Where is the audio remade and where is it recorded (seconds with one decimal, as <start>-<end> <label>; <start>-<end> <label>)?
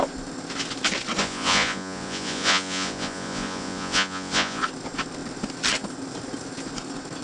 0.0-1.2 recorded; 1.2-4.6 remade; 4.6-7.2 recorded